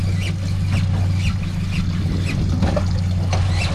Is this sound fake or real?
real